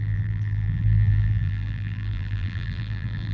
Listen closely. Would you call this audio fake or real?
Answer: fake